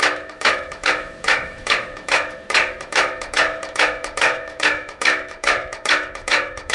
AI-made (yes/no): yes